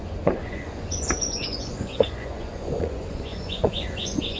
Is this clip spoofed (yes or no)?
yes